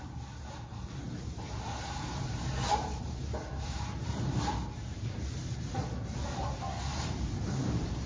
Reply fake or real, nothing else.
fake